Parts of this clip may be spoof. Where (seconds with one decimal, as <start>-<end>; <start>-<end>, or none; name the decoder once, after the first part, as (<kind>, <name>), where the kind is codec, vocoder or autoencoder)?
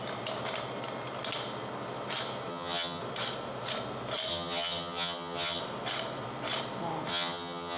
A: 2.5-3.0 (vocoder, HiFi-GAN); 4.3-5.6; 7.1-7.8